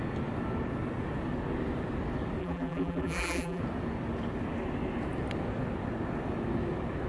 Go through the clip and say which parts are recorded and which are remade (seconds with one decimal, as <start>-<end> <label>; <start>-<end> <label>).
0.0-2.4 recorded; 2.4-3.6 remade; 3.6-7.1 recorded